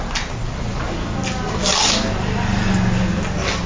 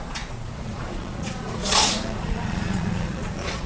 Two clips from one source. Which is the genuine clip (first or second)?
first